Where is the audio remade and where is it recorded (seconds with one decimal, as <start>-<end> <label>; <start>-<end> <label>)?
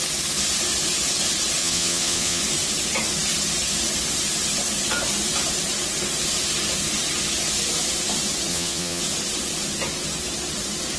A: 0.0-1.6 recorded; 1.6-2.4 remade; 2.4-8.5 recorded; 8.5-9.0 remade; 9.0-11.0 recorded